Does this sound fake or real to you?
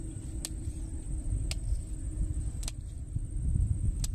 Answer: real